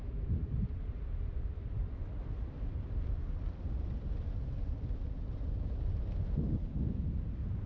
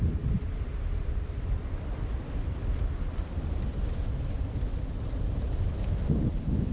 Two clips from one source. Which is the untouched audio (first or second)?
first